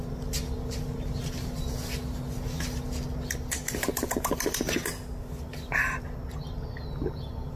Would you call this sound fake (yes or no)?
no